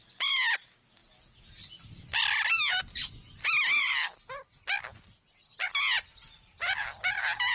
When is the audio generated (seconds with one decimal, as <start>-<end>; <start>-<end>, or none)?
none